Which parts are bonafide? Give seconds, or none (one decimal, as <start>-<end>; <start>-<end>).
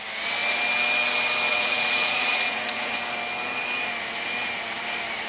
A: 0.0-1.5; 3.0-5.3